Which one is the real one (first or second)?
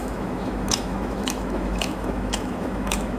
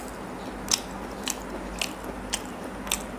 second